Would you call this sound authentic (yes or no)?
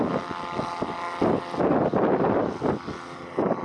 yes